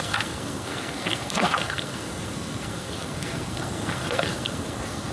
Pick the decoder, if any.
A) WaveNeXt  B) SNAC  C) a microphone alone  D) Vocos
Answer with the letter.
B